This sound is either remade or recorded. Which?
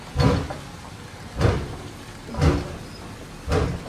recorded